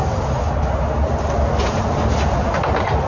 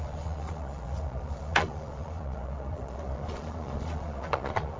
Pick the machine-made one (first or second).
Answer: second